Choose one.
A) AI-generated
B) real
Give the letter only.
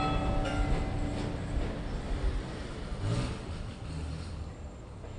B